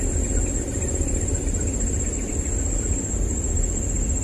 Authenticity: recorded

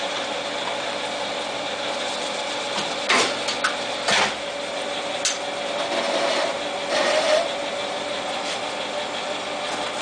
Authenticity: recorded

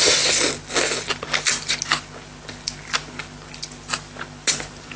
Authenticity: recorded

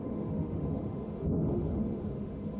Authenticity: remade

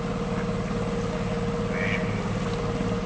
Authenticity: recorded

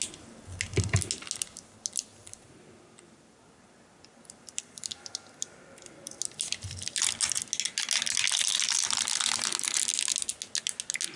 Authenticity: recorded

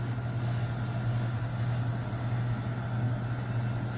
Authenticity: recorded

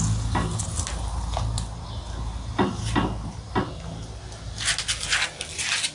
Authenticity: recorded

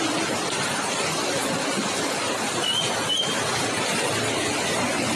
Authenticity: recorded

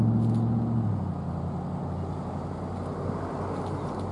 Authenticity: recorded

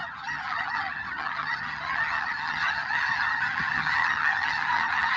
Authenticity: remade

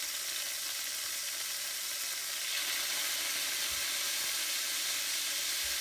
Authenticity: recorded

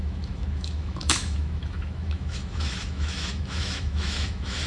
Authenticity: remade